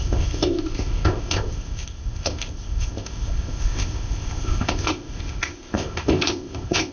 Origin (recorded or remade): remade